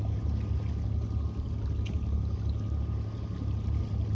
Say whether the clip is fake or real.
real